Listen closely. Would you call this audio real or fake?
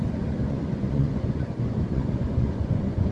fake